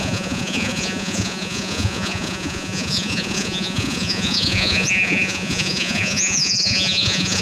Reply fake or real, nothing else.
fake